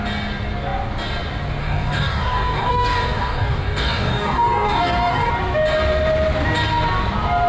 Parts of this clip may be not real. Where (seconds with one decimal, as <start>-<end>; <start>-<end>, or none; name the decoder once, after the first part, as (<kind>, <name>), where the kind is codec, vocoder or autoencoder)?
1.6-5.3 (codec, DAC)